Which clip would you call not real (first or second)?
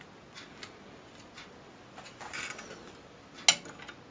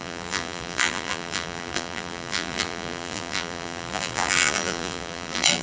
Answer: second